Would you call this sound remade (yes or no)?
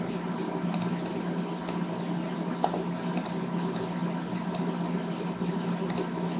no